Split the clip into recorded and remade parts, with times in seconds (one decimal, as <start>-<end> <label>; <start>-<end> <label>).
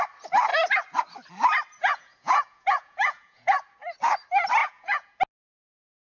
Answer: 0.0-1.8 recorded; 1.8-3.6 remade; 3.6-4.6 recorded; 4.6-5.2 remade; 5.2-6.2 recorded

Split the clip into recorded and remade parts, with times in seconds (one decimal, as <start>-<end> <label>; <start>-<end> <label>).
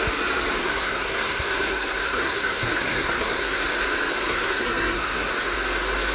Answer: 0.0-0.6 recorded; 0.6-3.6 remade; 3.6-4.3 recorded; 4.3-5.3 remade; 5.3-6.1 recorded